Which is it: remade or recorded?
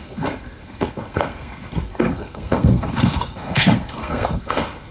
remade